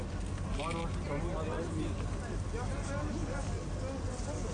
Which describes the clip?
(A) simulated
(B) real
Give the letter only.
B